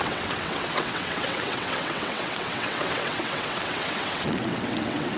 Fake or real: fake